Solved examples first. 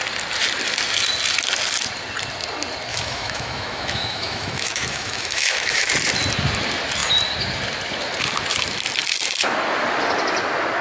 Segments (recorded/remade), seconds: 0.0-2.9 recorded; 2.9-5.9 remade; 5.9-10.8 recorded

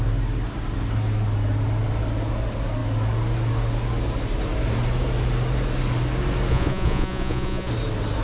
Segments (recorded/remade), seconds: 0.0-6.5 recorded; 6.5-7.7 remade; 7.7-8.2 recorded

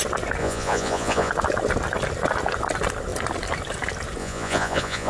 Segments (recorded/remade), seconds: 0.0-0.4 recorded; 0.4-1.3 remade; 1.3-4.2 recorded; 4.2-5.1 remade

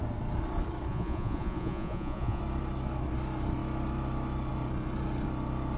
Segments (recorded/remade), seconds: 0.0-0.9 recorded; 0.9-2.4 remade; 2.4-5.8 recorded

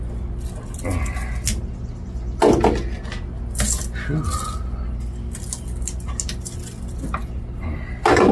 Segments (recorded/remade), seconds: 0.0-8.3 recorded